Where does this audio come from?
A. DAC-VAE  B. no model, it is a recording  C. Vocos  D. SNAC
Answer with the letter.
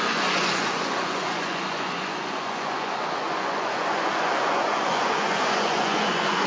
C